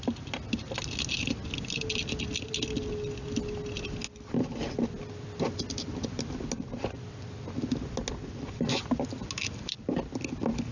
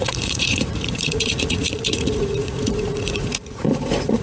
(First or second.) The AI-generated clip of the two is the second